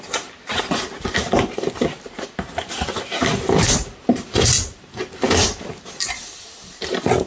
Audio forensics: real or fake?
real